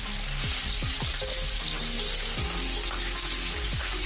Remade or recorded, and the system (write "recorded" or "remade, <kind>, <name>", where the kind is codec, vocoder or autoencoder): recorded